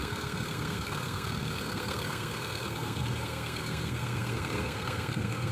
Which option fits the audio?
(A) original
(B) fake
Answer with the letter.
B